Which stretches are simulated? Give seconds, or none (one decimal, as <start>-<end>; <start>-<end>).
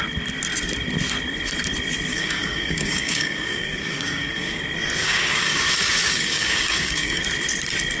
2.1-4.6; 5.0-7.2